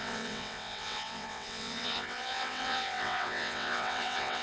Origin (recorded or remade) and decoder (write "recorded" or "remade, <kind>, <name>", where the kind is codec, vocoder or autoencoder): remade, vocoder, WaveNeXt